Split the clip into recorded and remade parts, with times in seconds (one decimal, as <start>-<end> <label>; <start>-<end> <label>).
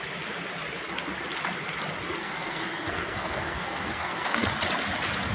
0.0-2.2 recorded; 2.2-4.5 remade; 4.5-5.3 recorded